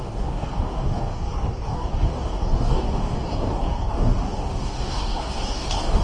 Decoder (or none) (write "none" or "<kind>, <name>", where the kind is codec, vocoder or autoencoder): codec, DAC